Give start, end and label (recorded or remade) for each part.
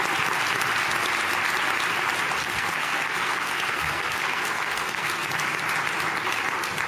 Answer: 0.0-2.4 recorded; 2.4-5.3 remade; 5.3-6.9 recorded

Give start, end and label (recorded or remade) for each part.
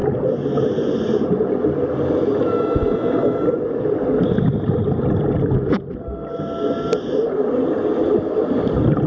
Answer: 0.0-9.1 recorded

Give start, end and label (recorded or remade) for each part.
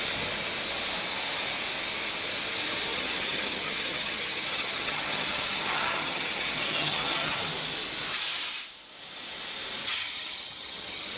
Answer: 0.0-2.9 recorded; 2.9-7.4 remade; 7.4-9.8 recorded; 9.8-11.2 remade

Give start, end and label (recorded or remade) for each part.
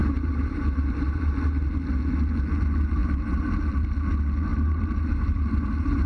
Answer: 0.0-1.3 remade; 1.3-3.0 recorded; 3.0-3.7 remade; 3.7-4.5 recorded; 4.5-6.1 remade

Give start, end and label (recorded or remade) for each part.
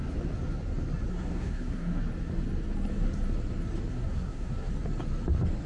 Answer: 0.0-1.1 recorded; 1.1-2.0 remade; 2.0-3.9 recorded; 3.9-4.7 remade; 4.7-5.7 recorded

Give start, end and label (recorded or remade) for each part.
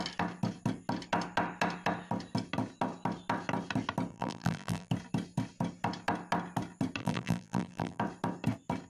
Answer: 0.0-4.1 recorded; 4.1-4.9 remade; 4.9-7.0 recorded; 7.0-8.0 remade; 8.0-8.9 recorded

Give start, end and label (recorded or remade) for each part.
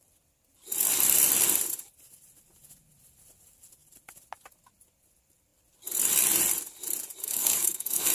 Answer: 0.0-7.2 recorded; 7.2-8.1 remade